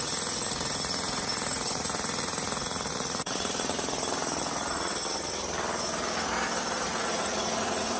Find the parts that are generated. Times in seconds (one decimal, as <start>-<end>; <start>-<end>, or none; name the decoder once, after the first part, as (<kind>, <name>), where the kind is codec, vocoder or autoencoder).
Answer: 0.0-4.9 (vocoder, Vocos); 6.9-8.0